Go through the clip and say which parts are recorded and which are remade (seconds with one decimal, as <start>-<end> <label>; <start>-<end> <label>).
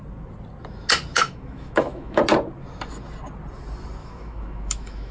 0.0-1.1 recorded; 1.1-2.2 remade; 2.2-4.0 recorded; 4.0-5.1 remade